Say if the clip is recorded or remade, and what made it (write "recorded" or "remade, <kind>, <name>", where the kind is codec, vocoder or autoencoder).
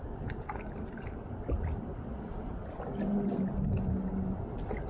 recorded